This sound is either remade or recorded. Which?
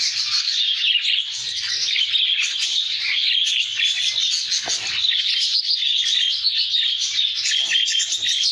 recorded